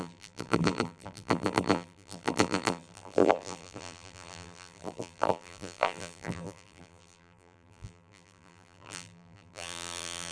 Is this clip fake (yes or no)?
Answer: yes